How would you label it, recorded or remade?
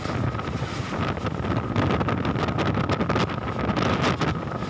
recorded